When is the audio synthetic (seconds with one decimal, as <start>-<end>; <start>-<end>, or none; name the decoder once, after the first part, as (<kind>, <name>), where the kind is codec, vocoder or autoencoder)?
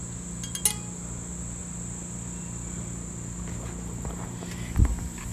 none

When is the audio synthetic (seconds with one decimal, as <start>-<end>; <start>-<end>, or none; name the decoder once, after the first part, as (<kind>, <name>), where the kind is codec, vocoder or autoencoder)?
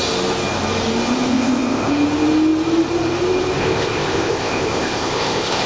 1.3-1.9 (codec, ZipCodec); 3.6-5.7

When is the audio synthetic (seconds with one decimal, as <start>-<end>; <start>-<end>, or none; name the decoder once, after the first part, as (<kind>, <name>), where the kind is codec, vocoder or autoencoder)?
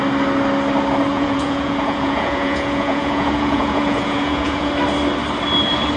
1.1-4.7 (vocoder, Vocos)